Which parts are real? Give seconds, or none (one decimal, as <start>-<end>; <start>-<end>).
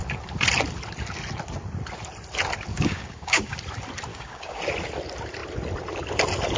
0.0-2.7; 3.6-4.1; 4.6-6.6